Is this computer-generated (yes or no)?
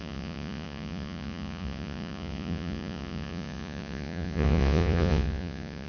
yes